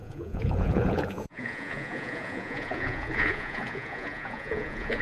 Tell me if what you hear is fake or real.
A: fake